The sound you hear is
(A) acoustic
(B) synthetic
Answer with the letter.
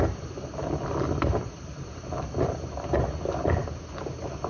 A